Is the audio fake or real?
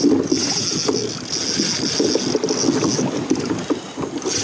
real